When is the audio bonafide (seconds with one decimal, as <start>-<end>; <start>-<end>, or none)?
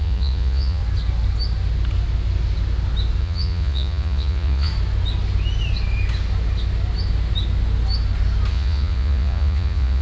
0.8-3.2; 4.7-8.5